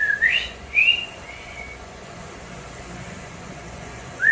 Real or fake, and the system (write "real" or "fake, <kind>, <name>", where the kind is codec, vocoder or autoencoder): fake, vocoder, Vocos